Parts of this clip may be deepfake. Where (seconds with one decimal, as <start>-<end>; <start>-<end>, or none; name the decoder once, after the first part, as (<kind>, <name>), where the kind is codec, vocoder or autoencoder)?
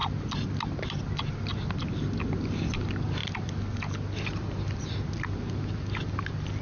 none